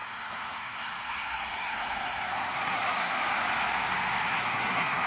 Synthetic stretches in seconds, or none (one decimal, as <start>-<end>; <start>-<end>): 0.0-3.1; 4.3-5.1